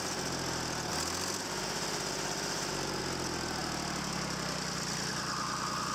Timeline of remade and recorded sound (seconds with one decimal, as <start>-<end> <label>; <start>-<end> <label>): 0.0-0.9 recorded; 0.9-3.0 remade; 3.0-5.9 recorded